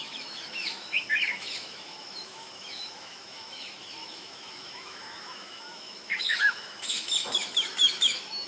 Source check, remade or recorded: remade